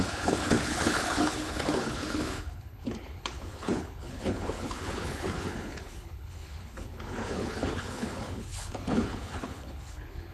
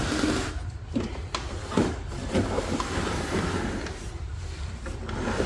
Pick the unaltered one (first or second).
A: second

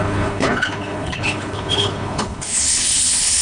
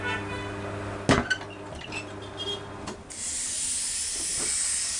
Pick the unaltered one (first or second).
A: second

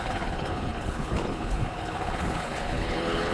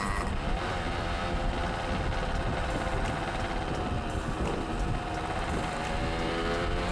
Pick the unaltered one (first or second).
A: second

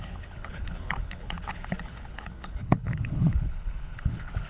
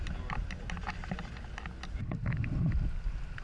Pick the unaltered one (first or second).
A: second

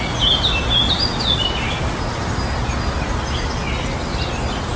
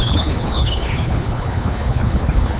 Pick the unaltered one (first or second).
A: first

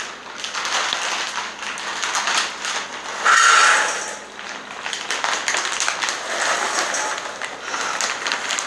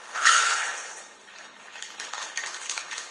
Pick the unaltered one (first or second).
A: first